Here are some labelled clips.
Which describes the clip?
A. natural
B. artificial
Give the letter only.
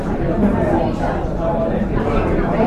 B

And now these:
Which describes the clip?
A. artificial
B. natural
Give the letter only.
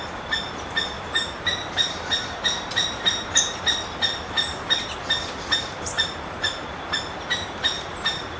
A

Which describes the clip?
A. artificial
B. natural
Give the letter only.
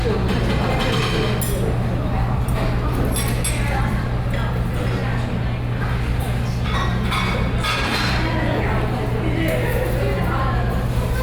B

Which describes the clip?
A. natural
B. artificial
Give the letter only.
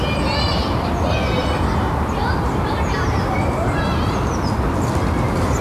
A